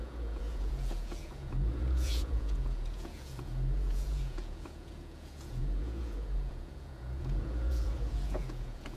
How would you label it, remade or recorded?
remade